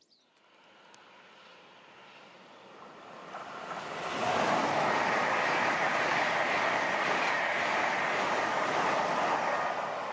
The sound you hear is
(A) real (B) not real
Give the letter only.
A